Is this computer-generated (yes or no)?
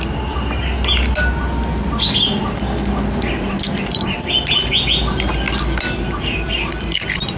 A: no